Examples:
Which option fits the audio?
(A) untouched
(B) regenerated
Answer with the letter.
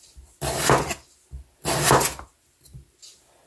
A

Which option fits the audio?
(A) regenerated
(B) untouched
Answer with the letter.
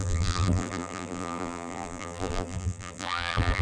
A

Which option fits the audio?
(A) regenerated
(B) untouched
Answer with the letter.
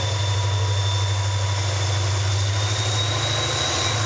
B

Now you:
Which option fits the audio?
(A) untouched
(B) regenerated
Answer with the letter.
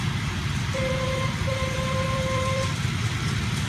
B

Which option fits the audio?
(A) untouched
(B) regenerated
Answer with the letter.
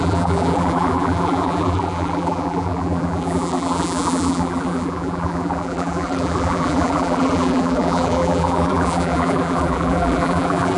B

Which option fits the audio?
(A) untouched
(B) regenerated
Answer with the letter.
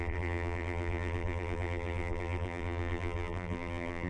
B